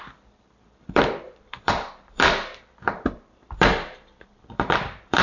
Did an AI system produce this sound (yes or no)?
yes